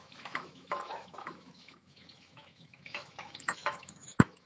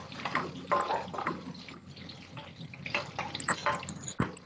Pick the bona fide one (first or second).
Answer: second